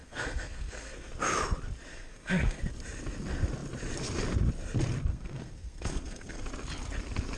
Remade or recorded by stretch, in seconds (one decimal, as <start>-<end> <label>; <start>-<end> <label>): 0.0-1.1 remade; 1.1-1.9 recorded; 1.9-2.6 remade; 2.6-5.1 recorded; 5.1-6.4 remade; 6.4-7.4 recorded